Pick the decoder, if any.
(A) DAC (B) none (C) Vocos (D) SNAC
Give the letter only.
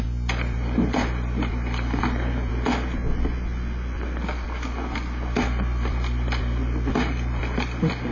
B